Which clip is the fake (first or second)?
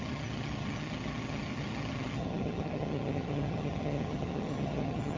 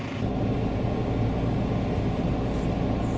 first